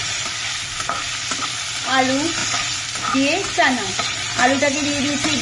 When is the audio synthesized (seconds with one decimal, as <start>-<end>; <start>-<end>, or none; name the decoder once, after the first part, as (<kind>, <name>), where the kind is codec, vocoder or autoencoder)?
none